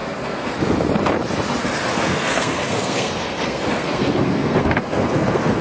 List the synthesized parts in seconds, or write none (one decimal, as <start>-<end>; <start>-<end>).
0.0-0.5; 1.9-5.6